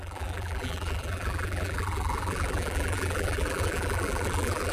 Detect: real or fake fake